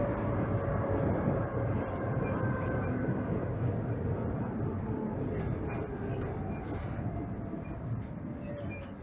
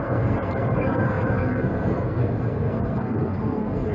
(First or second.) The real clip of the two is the first